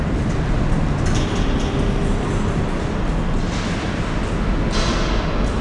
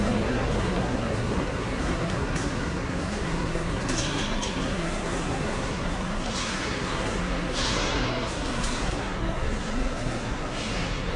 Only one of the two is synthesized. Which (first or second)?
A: second